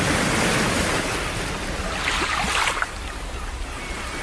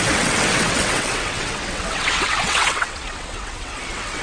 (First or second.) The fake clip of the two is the second